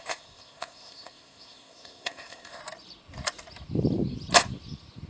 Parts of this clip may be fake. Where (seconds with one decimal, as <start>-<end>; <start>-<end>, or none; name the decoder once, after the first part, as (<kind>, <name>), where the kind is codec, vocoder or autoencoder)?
0.0-2.6 (codec, ZipCodec)